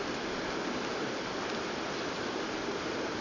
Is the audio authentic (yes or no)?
yes